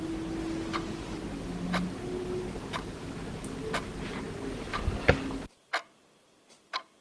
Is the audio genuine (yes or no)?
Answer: no